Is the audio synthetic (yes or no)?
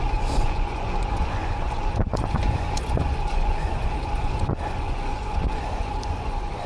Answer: yes